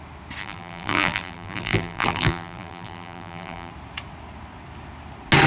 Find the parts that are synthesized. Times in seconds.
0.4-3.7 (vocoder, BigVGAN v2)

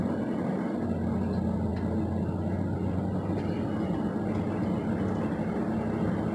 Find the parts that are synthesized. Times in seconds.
none

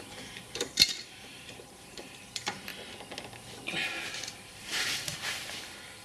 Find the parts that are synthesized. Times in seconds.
0.0-2.7 (vocoder, BigVGAN v2); 4.1-6.0

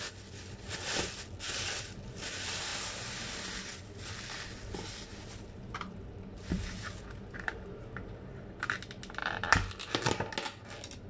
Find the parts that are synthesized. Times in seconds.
5.1-7.5 (vocoder, BigVGAN v2); 9.2-9.7

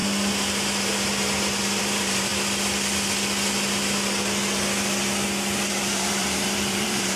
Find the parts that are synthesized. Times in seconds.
1.8-2.3 (vocoder, BigVGAN v2); 5.7-7.2